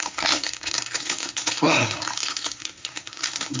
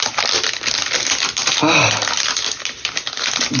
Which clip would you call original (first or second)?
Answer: second